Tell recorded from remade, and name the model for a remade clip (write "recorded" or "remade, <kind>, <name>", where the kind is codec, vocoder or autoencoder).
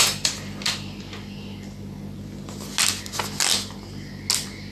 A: recorded